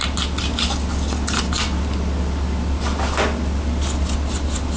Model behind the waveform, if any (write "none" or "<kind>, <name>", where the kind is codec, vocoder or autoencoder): none